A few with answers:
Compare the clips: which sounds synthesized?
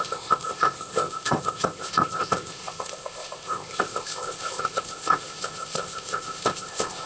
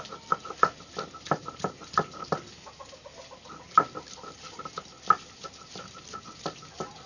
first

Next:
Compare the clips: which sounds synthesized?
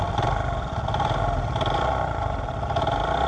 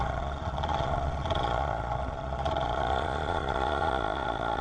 second